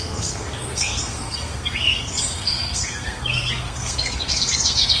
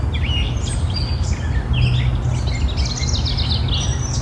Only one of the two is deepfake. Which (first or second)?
first